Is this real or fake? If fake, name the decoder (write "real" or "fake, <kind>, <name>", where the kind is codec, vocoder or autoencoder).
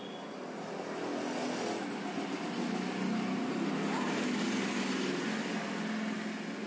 real